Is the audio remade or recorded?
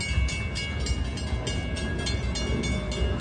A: recorded